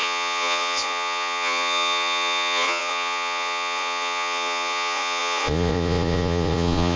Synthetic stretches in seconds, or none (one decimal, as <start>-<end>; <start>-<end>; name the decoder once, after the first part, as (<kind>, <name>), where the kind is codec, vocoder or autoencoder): 0.0-7.0 (vocoder, Vocos)